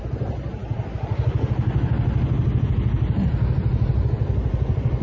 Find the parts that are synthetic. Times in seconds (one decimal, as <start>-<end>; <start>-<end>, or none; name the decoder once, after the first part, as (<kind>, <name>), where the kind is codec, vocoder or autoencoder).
none